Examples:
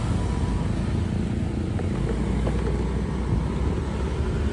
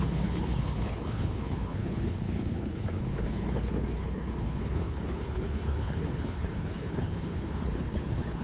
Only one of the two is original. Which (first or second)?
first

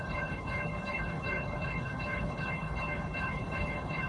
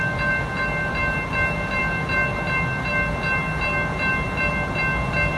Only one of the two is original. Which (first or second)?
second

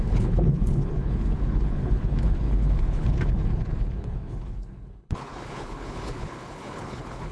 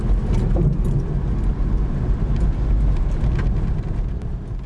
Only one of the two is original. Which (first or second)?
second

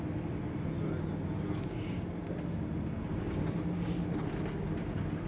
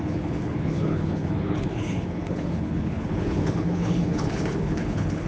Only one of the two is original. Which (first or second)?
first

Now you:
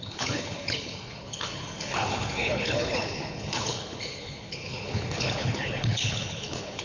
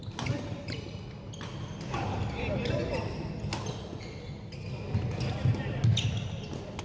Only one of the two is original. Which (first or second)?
second